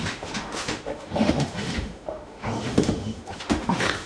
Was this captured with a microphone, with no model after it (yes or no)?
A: no